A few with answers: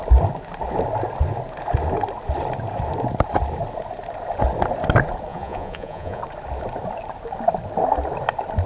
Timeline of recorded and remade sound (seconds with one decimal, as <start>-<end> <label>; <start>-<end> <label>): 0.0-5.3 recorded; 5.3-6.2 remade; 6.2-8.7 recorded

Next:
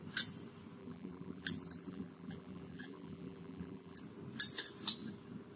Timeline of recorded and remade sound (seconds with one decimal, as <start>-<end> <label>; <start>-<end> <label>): 0.0-0.8 recorded; 0.8-4.0 remade; 4.0-5.6 recorded

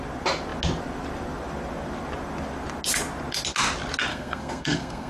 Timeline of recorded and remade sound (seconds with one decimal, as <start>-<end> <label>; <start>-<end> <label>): 0.0-4.1 recorded; 4.1-5.1 remade